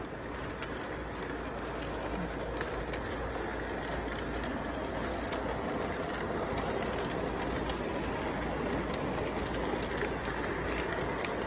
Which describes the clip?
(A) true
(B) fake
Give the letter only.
A